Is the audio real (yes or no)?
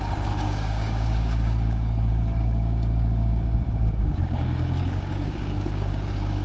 no